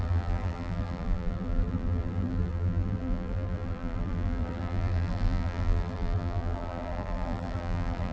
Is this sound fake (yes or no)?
yes